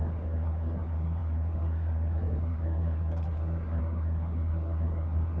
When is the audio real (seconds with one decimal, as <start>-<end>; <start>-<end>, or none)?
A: none